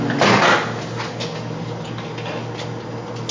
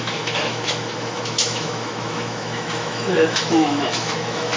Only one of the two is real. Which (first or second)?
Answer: first